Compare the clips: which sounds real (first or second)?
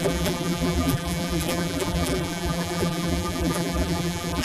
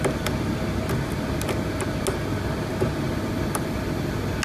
second